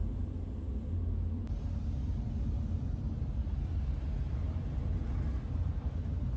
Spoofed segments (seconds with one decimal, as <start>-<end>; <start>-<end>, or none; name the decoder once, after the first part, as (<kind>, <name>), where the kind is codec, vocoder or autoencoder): none